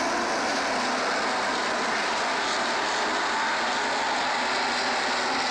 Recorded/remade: recorded